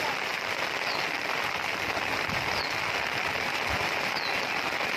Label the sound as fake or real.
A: real